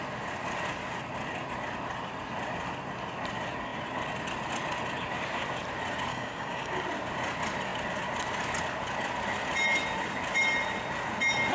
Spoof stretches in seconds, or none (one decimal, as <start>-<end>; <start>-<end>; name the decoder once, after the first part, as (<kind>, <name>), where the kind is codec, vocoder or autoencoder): 6.1-6.8 (codec, DAC)

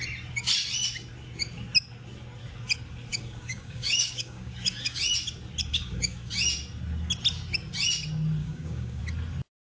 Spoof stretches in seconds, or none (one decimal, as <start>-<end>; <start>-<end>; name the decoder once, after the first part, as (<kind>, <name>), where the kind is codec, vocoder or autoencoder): 3.1-5.0 (codec, DAC); 5.7-6.3; 8.4-9.0

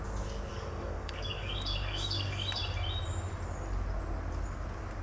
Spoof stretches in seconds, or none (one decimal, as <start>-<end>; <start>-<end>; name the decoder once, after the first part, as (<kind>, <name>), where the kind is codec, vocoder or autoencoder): 0.5-2.6 (codec, DAC)